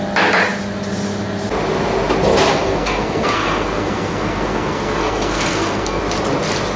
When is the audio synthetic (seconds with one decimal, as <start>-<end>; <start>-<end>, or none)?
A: 2.5-6.0